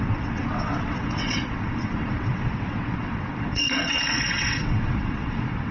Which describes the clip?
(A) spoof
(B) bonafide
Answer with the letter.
A